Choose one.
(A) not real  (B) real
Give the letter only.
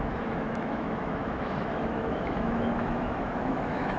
A